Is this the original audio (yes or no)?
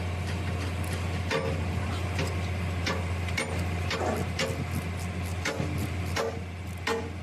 yes